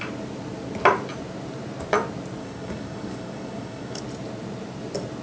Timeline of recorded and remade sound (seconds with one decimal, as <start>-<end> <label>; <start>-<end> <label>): 0.0-2.4 recorded; 2.4-4.0 remade; 4.0-5.2 recorded